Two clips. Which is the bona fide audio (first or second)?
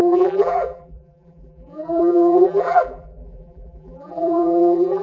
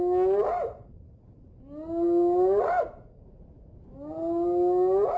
second